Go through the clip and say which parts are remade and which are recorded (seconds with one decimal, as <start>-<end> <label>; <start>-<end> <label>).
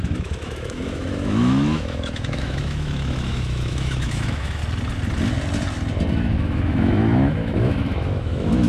0.0-4.6 remade; 4.6-6.1 recorded; 6.1-8.7 remade